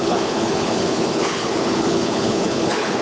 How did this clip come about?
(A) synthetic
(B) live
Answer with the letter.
A